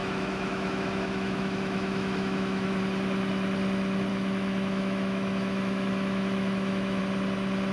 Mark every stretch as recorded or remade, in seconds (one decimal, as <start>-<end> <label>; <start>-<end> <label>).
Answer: 0.0-2.8 remade; 2.8-4.1 recorded; 4.1-7.0 remade; 7.0-7.7 recorded